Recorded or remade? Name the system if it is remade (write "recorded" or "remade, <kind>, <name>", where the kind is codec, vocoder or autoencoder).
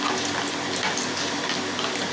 recorded